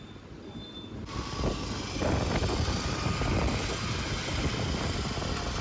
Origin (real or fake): real